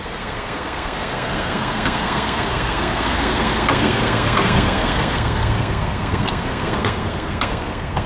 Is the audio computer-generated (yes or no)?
yes